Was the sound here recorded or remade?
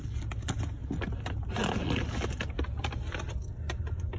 recorded